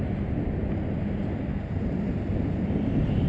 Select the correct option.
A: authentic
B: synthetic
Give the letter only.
A